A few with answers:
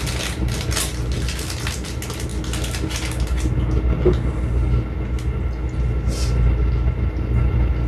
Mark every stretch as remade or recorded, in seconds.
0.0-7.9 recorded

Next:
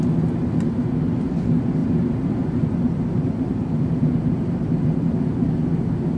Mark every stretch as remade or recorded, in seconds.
0.0-1.8 recorded; 1.8-5.5 remade; 5.5-6.2 recorded

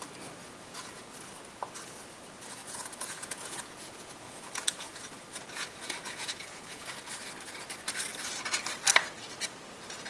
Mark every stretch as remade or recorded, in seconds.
0.0-0.4 recorded; 0.4-1.1 remade; 1.1-2.6 recorded; 2.6-7.1 remade; 7.1-10.1 recorded